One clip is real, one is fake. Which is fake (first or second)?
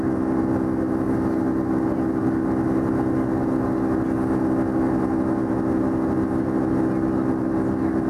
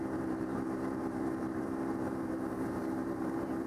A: second